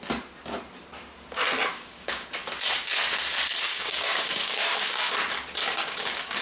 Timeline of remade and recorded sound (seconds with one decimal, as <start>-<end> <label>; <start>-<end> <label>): 0.0-1.7 recorded; 1.7-2.3 remade; 2.3-3.7 recorded; 3.7-5.1 remade; 5.1-5.6 recorded; 5.6-6.4 remade